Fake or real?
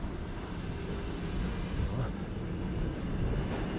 real